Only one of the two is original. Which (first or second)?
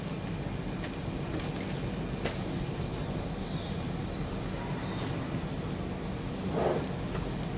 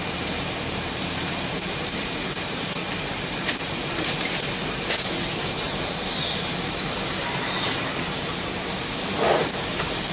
first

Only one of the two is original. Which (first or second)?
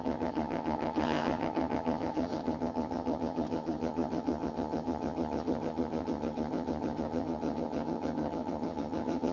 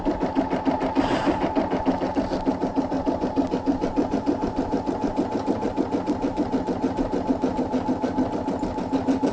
second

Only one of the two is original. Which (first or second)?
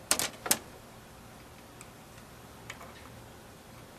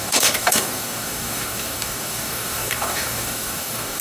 first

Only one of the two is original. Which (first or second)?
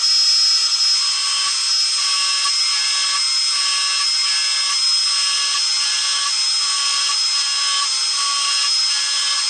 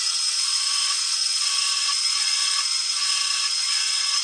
first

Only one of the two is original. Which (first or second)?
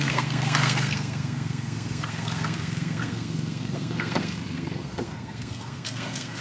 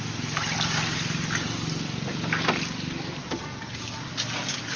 second